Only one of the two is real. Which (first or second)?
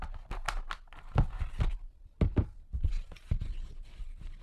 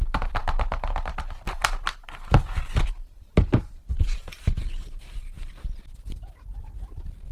first